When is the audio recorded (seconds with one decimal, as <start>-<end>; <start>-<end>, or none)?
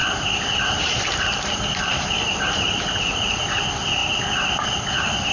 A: 3.2-5.3